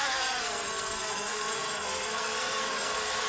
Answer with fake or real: fake